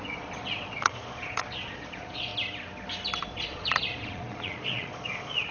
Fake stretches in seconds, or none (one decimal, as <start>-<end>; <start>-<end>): 0.0-2.3; 3.2-5.5